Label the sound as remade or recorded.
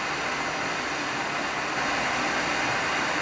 recorded